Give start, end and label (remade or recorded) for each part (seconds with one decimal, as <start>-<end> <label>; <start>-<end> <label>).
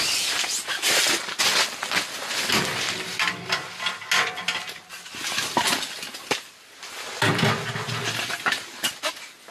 0.0-9.5 recorded